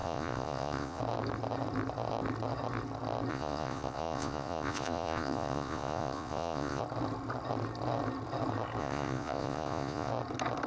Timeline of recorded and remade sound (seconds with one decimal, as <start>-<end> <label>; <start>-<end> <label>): 0.0-1.0 remade; 1.0-3.3 recorded; 3.3-6.8 remade; 6.8-8.8 recorded; 8.8-10.1 remade; 10.1-10.7 recorded